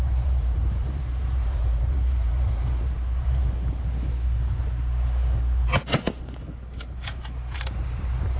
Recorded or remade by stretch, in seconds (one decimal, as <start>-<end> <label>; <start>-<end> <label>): 0.0-3.4 remade; 3.4-7.8 recorded; 7.8-8.4 remade